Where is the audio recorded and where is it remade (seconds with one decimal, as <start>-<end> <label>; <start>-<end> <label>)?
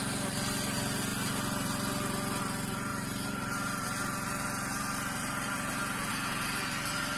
0.0-7.2 recorded